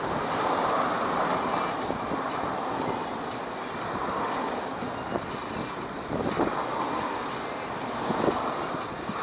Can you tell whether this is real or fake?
real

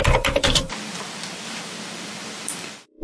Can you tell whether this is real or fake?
fake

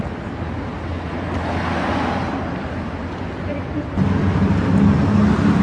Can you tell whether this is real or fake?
real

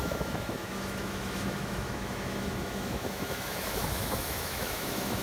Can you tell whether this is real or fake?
fake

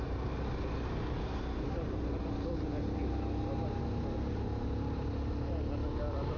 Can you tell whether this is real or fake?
real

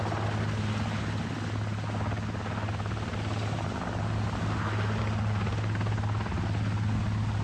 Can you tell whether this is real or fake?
real